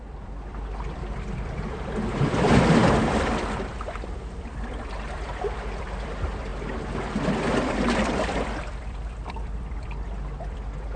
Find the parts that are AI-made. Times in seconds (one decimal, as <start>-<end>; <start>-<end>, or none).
0.0-11.0